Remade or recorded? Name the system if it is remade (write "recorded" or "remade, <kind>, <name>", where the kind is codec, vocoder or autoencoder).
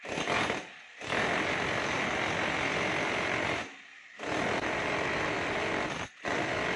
recorded